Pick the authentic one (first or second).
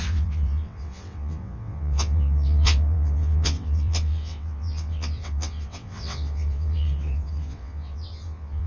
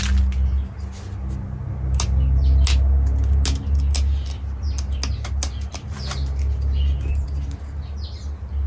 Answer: second